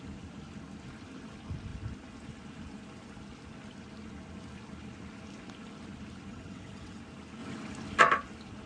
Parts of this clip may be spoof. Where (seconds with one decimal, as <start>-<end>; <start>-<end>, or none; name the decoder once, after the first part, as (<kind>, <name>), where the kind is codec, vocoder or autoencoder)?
6.3-7.0 (vocoder, WaveNeXt)